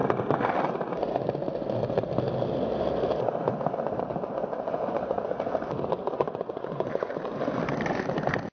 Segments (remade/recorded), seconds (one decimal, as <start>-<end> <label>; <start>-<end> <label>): 0.0-4.5 recorded; 4.5-5.2 remade; 5.2-6.0 recorded; 6.0-7.6 remade; 7.6-8.5 recorded